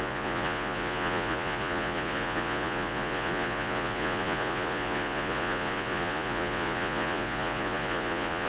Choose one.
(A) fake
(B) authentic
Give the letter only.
A